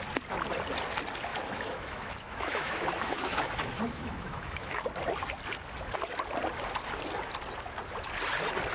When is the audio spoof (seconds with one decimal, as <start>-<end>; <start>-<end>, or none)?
1.3-4.8